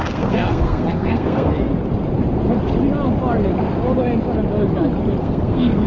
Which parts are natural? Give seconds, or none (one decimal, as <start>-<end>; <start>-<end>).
1.7-5.2

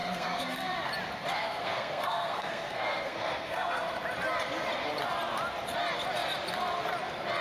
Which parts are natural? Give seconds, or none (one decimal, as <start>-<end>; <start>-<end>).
0.9-1.3; 3.9-7.4

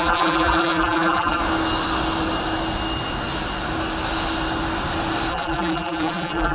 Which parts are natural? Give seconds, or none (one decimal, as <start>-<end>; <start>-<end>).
1.4-5.3

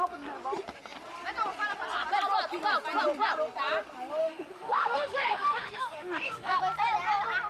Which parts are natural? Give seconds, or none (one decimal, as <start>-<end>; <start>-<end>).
0.0-4.2; 6.6-7.5

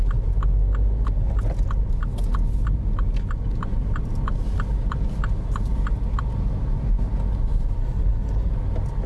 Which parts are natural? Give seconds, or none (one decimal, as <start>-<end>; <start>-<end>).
0.0-7.8; 8.5-9.1